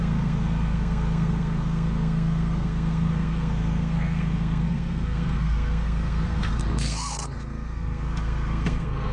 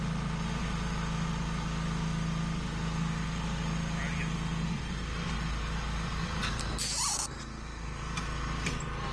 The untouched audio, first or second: second